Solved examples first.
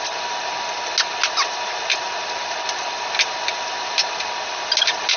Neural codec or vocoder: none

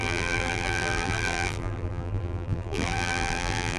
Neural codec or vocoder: vocoder, BigVGAN v2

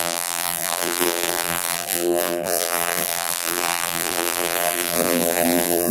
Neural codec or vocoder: vocoder, BigVGAN v2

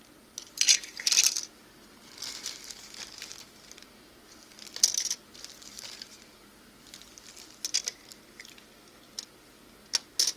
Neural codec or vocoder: none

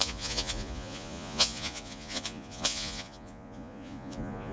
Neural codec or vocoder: vocoder, Vocos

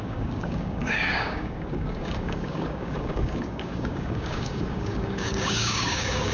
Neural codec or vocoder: codec, DAC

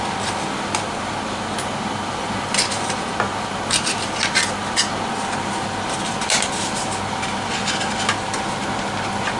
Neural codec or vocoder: none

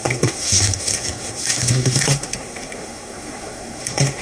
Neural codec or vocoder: codec, SNAC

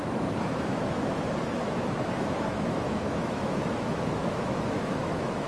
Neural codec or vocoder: autoencoder, DAC-VAE